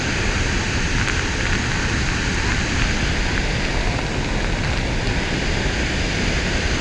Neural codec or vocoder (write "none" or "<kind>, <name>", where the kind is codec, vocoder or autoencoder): none